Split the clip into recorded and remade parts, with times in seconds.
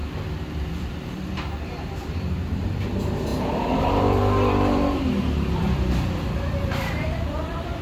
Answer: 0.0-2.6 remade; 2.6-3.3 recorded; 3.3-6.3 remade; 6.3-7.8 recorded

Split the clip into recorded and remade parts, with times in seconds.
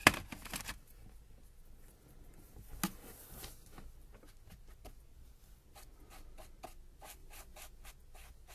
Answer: 0.0-8.5 recorded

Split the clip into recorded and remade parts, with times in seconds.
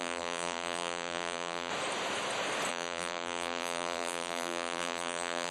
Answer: 0.0-1.7 remade; 1.7-2.7 recorded; 2.7-5.5 remade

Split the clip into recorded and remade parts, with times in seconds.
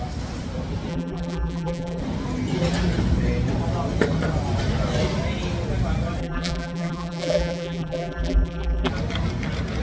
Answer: 0.0-0.9 recorded; 0.9-2.0 remade; 2.0-6.2 recorded; 6.2-8.9 remade; 8.9-9.8 recorded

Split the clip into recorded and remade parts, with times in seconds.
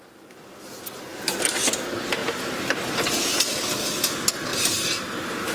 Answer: 0.0-1.1 recorded; 1.1-1.7 remade; 1.7-5.5 recorded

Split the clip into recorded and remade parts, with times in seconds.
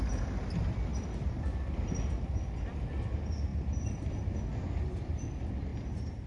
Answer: 0.0-3.5 recorded; 3.5-4.4 remade; 4.4-6.3 recorded